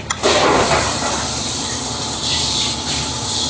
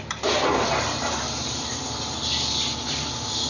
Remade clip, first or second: first